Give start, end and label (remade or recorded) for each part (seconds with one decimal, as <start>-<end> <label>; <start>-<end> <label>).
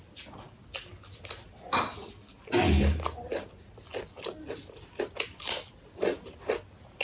0.0-7.0 recorded